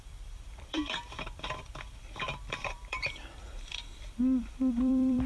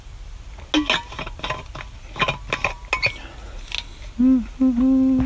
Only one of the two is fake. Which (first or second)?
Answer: first